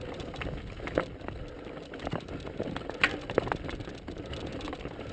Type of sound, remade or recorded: recorded